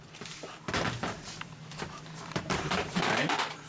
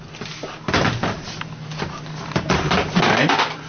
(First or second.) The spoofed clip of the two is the first